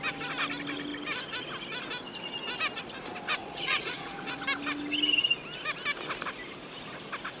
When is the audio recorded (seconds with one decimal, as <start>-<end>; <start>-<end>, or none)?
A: 0.0-3.4; 4.4-7.4

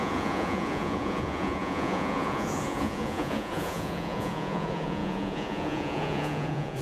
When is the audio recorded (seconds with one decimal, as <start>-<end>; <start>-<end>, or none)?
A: none

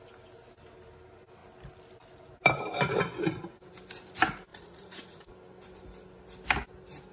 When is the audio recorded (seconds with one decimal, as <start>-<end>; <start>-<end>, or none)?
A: 0.0-4.5; 5.3-7.1

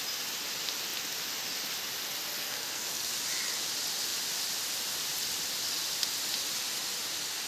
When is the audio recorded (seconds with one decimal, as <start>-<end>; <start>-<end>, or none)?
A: 0.0-2.4; 3.1-7.5

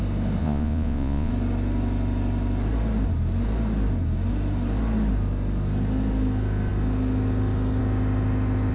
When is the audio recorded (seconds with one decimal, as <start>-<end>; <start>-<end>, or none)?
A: 0.0-0.4; 1.3-8.7

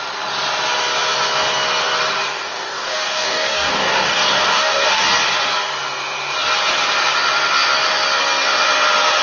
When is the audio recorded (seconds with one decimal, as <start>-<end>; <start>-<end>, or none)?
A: 0.0-2.3; 5.0-9.2

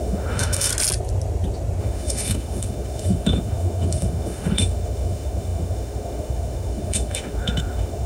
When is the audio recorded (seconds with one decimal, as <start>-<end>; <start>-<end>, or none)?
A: 0.7-1.8

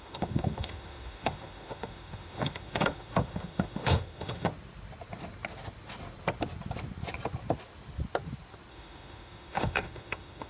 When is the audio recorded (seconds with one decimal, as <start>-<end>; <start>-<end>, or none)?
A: 4.5-8.7